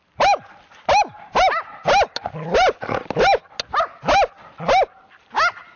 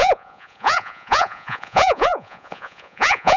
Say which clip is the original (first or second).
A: first